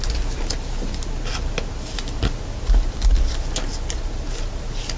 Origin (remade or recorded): recorded